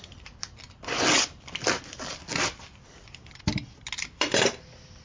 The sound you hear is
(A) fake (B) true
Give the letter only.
B